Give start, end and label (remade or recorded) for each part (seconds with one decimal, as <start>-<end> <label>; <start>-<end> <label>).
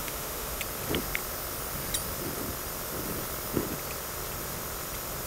0.0-0.6 remade; 0.6-5.3 recorded